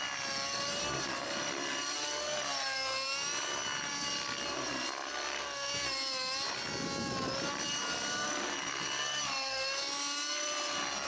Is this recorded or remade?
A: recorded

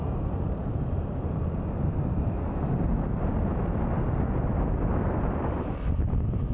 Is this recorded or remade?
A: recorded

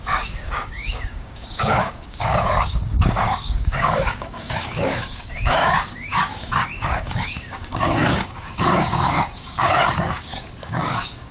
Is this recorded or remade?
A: remade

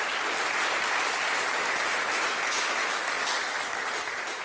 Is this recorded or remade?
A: recorded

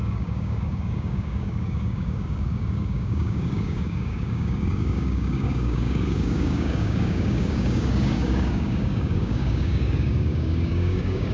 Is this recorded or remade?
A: remade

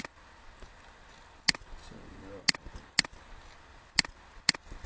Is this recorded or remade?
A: recorded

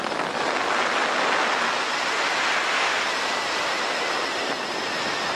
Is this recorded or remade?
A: recorded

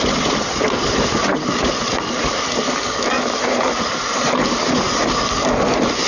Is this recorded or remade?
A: recorded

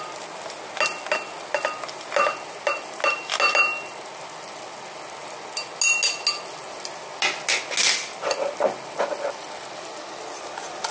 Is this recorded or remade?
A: recorded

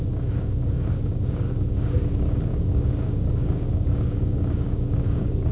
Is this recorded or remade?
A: remade